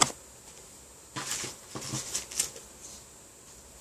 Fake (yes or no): no